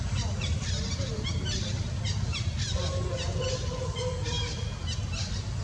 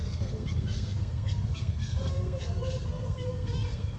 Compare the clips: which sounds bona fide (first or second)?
first